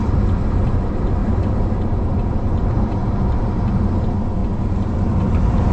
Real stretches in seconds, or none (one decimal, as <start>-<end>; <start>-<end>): 3.0-3.8; 4.4-5.3